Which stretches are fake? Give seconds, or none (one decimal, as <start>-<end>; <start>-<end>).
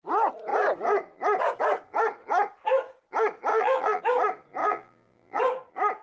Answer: 3.5-4.0; 4.6-5.4